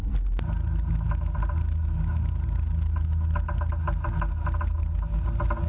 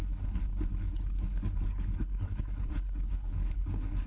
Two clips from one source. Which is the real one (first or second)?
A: first